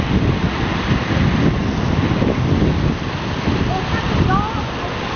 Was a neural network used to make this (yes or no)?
yes